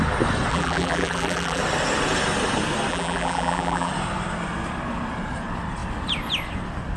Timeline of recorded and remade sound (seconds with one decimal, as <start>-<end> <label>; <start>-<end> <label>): 0.0-0.5 recorded; 0.5-1.6 remade; 1.6-2.9 recorded; 2.9-3.9 remade; 3.9-7.0 recorded